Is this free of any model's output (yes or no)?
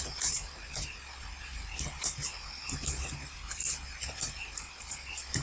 yes